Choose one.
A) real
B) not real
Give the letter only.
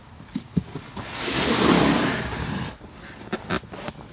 A